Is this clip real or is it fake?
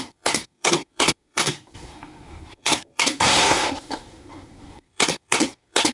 fake